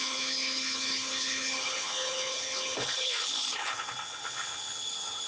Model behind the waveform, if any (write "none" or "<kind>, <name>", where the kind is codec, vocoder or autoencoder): codec, HILCodec